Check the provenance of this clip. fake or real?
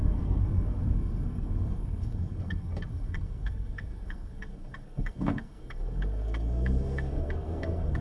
fake